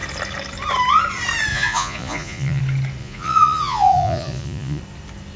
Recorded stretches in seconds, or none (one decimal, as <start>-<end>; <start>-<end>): 0.0-1.5; 2.6-3.0; 4.8-5.4